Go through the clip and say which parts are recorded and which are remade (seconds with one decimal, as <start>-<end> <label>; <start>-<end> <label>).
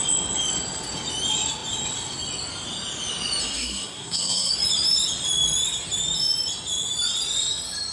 0.0-3.4 recorded; 3.4-4.5 remade; 4.5-7.9 recorded